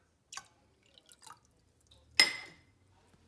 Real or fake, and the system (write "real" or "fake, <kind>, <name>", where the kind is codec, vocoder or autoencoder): real